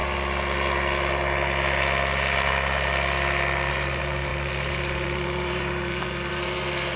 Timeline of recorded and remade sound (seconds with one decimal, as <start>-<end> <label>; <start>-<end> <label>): 0.0-3.7 recorded; 3.7-7.0 remade